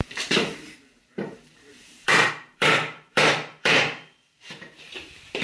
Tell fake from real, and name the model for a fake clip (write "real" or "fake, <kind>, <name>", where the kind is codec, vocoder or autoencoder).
fake, vocoder, BigVGAN v2